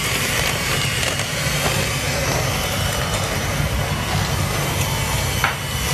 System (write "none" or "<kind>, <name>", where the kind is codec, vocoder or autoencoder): none